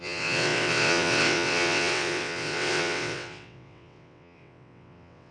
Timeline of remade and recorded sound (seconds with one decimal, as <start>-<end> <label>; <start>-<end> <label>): 0.0-5.3 remade